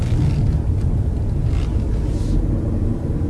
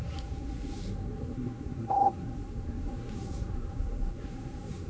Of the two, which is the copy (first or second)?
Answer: second